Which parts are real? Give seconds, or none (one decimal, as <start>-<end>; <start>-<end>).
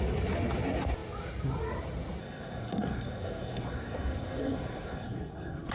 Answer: 0.0-2.2